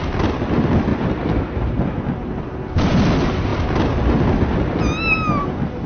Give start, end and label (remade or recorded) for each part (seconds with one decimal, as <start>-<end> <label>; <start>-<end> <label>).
0.0-0.9 recorded; 0.9-2.0 remade; 2.0-5.9 recorded